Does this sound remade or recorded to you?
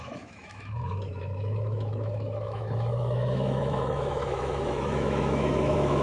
remade